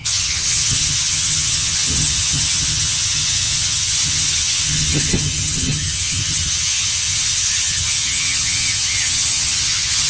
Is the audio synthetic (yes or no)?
yes